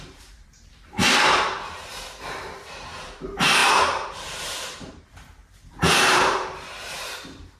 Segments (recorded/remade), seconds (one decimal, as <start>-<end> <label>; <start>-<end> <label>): 0.0-7.6 remade